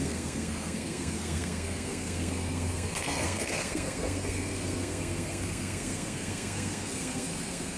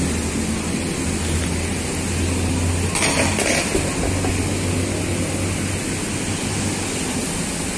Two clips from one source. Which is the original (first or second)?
second